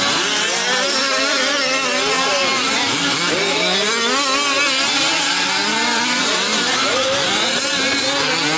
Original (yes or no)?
yes